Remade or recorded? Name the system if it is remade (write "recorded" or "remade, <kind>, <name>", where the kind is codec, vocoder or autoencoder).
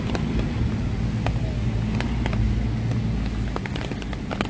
recorded